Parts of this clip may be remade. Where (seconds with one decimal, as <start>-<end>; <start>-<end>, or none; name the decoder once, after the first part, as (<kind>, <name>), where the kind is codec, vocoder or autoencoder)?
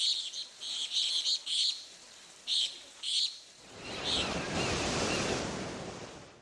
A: 1.4-4.8 (vocoder, BigVGAN v2)